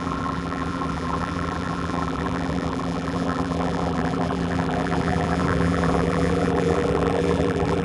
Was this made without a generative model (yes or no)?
no